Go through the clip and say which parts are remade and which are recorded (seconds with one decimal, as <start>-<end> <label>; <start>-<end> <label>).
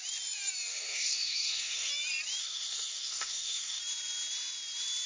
0.0-0.7 recorded; 0.7-1.9 remade; 1.9-2.4 recorded; 2.4-3.8 remade; 3.8-5.1 recorded